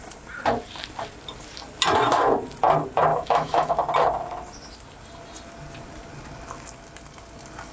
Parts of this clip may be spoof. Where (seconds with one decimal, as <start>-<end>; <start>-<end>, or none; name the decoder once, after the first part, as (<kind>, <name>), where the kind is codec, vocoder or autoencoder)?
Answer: 3.1-3.7 (autoencoder, DAC-VAE)

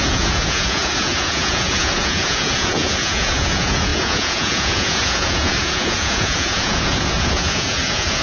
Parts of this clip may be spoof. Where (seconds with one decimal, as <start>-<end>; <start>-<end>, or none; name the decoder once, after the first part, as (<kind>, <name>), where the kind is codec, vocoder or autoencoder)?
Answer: 0.0-8.2 (vocoder, Vocos)

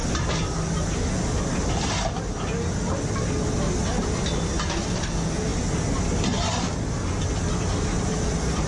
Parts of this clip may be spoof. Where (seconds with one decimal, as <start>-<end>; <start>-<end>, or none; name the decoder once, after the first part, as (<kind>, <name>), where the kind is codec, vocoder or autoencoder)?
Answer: none

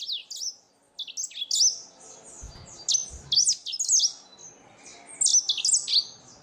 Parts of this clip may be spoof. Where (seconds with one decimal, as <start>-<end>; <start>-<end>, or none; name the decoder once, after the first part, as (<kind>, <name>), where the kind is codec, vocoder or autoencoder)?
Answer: none